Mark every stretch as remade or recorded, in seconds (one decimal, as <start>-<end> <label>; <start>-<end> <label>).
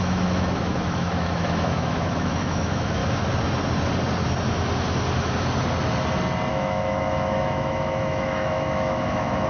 0.0-3.0 remade; 3.0-6.5 recorded; 6.5-9.5 remade